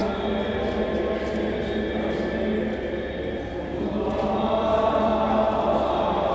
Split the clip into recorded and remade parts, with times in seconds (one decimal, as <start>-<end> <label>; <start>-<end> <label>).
0.0-3.8 recorded; 3.8-5.1 remade; 5.1-6.3 recorded